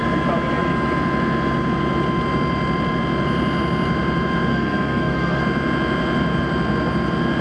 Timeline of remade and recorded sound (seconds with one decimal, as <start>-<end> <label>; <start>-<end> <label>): 0.0-4.5 recorded; 4.5-5.4 remade; 5.4-7.4 recorded